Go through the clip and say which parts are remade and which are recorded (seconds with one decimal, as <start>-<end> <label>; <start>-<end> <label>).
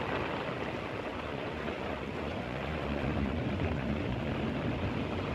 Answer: 0.0-1.1 recorded; 1.1-4.3 remade; 4.3-5.3 recorded